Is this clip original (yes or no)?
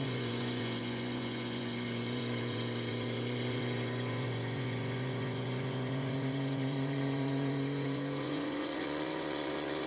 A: no